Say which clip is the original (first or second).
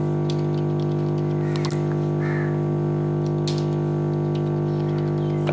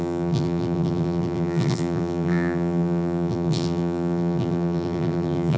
first